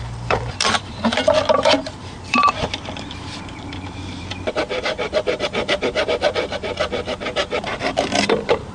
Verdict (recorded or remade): remade